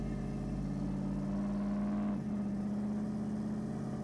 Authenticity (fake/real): real